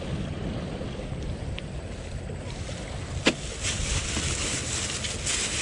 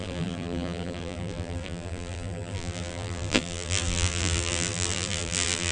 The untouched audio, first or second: first